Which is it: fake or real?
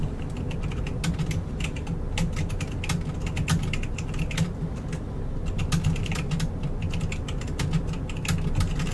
real